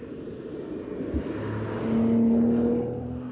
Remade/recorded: recorded